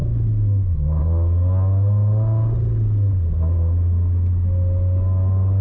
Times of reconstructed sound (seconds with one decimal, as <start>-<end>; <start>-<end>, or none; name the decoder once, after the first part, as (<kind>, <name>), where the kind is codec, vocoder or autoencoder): none